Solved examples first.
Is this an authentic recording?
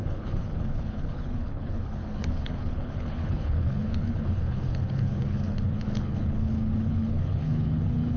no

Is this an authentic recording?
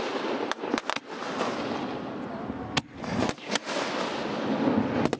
yes